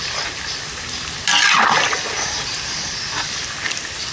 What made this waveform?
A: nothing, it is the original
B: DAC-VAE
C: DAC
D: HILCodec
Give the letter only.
A